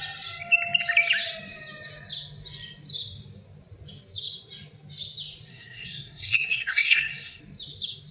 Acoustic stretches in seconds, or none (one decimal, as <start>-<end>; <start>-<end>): 0.0-5.5; 7.4-8.1